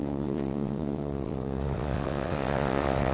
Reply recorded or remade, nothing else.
remade